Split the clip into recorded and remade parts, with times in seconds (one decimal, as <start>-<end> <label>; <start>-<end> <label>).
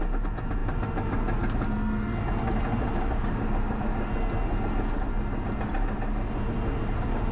0.0-7.3 recorded